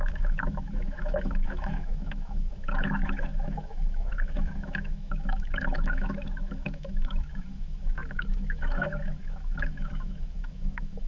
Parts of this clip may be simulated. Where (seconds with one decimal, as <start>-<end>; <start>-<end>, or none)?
0.0-11.1